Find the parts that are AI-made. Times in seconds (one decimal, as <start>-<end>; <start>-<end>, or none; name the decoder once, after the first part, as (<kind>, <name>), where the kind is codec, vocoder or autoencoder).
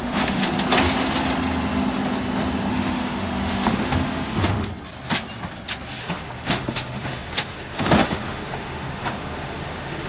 0.0-0.5 (autoencoder, DAC-VAE); 2.7-4.7; 6.0-10.1